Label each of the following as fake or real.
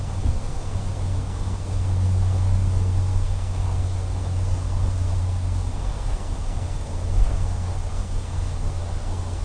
fake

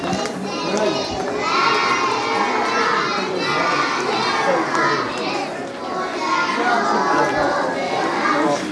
real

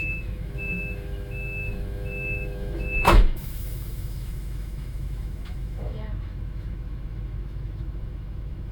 fake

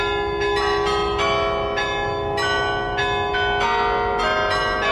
real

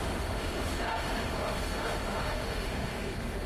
fake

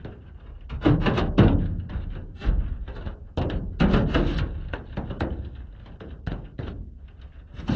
real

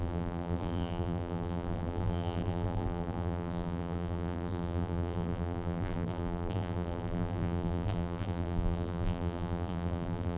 fake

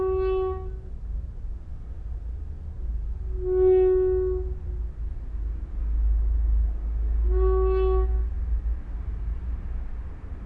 real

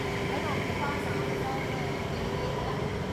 real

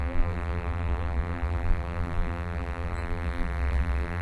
fake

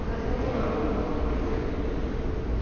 real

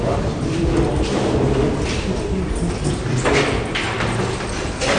real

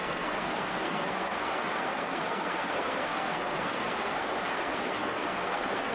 fake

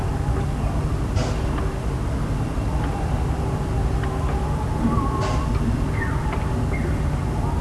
real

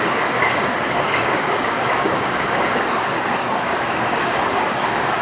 fake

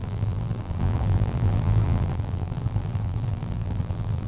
fake